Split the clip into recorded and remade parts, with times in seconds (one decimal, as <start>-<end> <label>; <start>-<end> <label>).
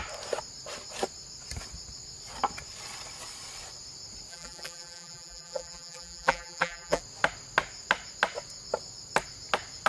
0.0-4.3 recorded; 4.3-7.0 remade; 7.0-9.9 recorded